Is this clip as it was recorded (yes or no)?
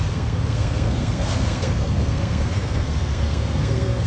no